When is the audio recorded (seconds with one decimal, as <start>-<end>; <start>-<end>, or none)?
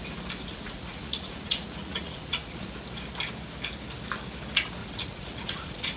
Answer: 0.0-0.5; 2.7-4.8